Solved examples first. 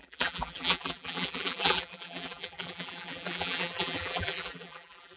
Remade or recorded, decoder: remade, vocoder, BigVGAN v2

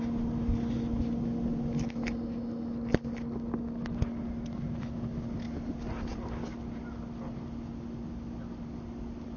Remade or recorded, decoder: recorded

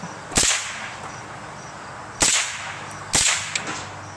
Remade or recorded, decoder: recorded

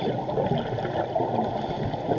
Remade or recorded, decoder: recorded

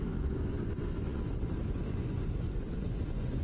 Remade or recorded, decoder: remade, vocoder, Vocos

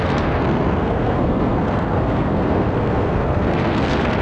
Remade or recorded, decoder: remade, codec, SNAC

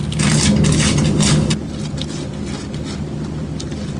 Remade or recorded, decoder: recorded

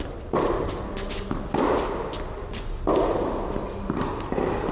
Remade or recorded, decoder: recorded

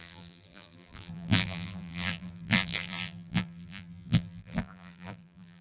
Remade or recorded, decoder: remade, vocoder, BigVGAN v2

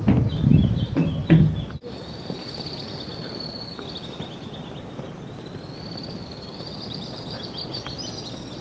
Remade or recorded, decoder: recorded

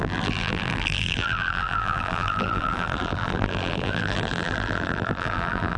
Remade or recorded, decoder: remade, vocoder, BigVGAN v2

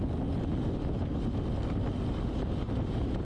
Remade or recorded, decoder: recorded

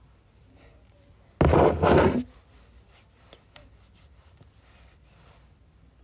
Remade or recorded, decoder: recorded